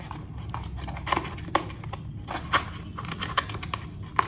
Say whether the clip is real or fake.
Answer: real